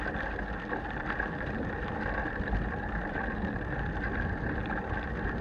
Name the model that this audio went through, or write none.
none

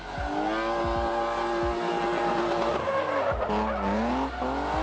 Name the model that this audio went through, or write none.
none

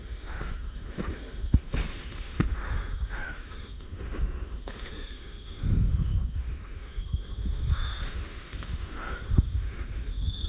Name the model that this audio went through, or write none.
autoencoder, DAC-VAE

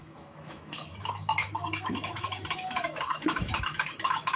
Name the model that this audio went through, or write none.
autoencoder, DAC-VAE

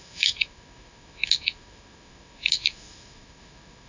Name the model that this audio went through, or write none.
autoencoder, DAC-VAE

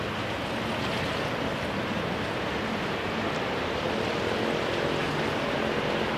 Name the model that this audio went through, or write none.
none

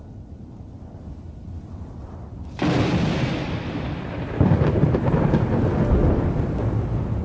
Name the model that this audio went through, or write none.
none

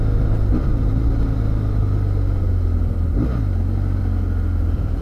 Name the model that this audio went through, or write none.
none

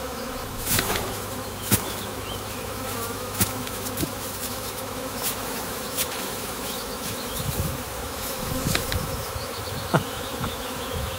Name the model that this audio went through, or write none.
autoencoder, DAC-VAE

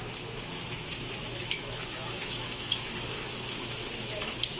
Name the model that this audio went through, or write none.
autoencoder, DAC-VAE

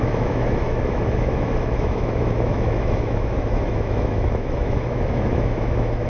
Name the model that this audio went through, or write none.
autoencoder, DAC-VAE